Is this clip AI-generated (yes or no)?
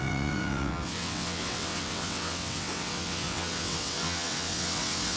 yes